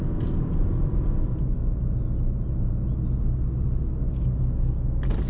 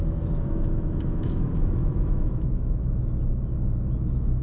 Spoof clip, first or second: second